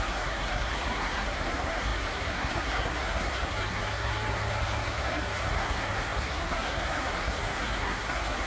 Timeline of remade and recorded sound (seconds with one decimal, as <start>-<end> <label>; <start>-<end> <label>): 0.0-8.5 remade